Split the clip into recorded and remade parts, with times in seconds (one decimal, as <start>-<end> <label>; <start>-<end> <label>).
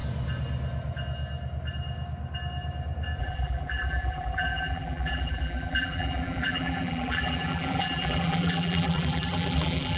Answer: 0.0-3.2 recorded; 3.2-10.0 remade